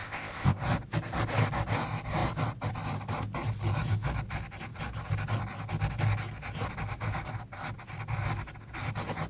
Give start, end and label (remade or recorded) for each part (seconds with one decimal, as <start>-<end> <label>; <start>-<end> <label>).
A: 0.0-0.6 remade; 0.6-9.3 recorded